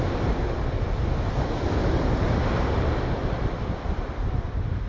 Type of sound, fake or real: real